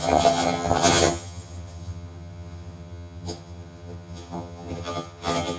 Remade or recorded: remade